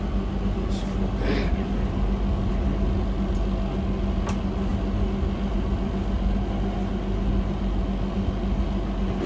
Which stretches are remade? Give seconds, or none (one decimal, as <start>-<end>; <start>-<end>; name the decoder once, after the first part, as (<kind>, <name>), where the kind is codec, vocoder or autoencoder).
none